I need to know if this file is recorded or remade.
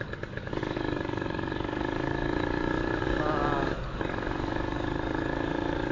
remade